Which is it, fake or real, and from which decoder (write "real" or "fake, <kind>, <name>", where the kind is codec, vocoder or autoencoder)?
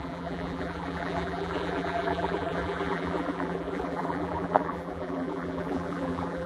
fake, vocoder, BigVGAN v2